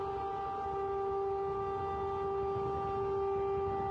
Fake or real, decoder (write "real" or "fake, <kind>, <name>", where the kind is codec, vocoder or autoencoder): real